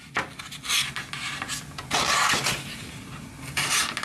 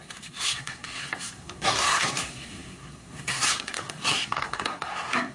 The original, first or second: first